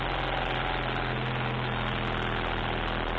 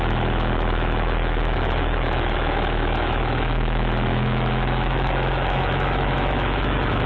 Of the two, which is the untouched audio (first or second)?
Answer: first